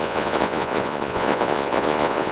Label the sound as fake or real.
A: fake